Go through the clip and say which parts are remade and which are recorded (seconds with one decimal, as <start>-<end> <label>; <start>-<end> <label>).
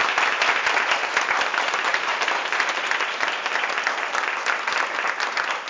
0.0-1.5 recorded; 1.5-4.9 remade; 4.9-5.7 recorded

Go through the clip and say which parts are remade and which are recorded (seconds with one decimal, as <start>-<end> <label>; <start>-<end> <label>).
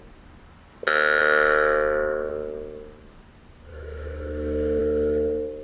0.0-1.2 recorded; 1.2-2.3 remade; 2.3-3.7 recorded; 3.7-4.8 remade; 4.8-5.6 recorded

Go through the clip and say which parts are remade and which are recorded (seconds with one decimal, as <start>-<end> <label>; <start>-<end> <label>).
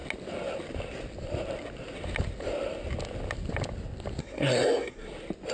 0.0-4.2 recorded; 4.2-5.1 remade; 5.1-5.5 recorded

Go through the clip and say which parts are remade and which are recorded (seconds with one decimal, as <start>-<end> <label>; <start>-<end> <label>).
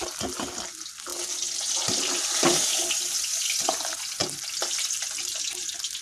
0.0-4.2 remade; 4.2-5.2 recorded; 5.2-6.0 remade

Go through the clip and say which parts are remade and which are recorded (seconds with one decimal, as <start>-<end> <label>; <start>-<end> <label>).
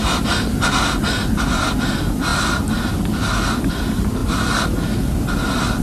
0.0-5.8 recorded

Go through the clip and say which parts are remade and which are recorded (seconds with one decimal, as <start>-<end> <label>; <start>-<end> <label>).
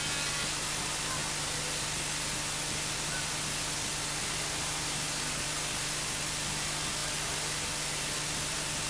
0.0-8.9 recorded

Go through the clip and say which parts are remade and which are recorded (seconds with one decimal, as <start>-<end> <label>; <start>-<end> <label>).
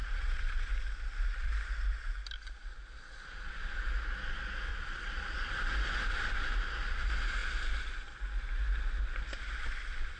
0.0-0.7 remade; 0.7-4.7 recorded; 4.7-5.5 remade; 5.5-10.2 recorded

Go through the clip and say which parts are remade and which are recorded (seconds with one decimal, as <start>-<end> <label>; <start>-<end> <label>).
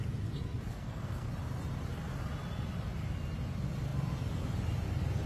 0.0-0.7 recorded; 0.7-1.3 remade; 1.3-5.3 recorded